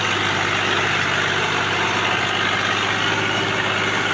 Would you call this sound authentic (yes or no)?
yes